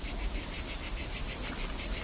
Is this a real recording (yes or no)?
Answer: yes